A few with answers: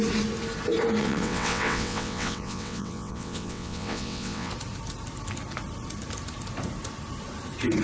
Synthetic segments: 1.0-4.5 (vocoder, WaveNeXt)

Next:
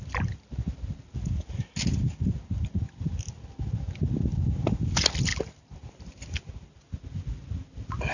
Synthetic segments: none

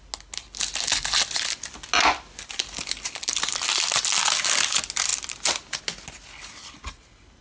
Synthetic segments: none

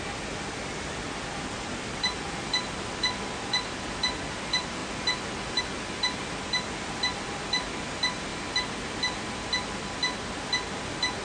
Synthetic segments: none

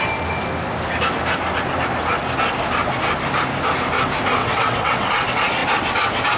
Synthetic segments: 4.4-5.1 (vocoder, WaveNeXt)

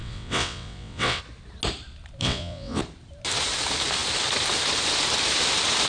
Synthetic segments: 0.0-1.2 (vocoder, WaveNeXt); 2.2-2.8

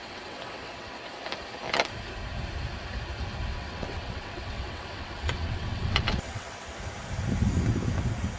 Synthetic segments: 0.0-1.1 (vocoder, WaveNeXt); 3.5-6.8

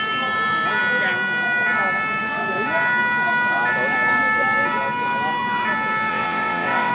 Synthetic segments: 6.1-6.9 (vocoder, WaveNeXt)